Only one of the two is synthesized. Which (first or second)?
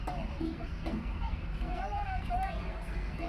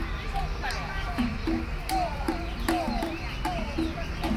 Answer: first